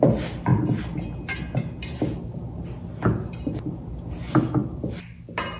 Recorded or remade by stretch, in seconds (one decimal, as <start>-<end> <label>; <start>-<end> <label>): 0.0-5.6 recorded